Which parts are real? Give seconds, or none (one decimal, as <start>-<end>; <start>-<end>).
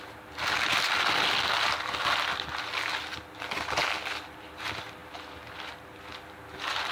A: 0.0-6.9